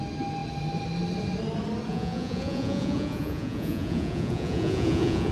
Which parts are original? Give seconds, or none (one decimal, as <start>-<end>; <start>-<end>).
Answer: 0.0-1.9